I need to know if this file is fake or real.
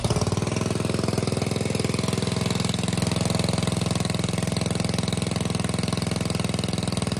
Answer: real